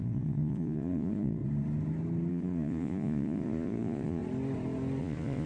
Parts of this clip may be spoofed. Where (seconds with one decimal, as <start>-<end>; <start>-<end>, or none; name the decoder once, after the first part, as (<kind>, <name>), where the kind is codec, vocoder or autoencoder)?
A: 0.0-1.4 (vocoder, Vocos); 2.3-4.2; 5.0-5.5